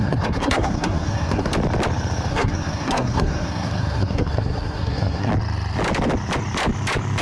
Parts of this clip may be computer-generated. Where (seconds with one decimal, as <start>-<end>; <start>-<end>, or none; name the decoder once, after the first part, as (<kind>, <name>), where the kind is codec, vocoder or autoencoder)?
0.0-1.5 (codec, SNAC); 2.3-5.3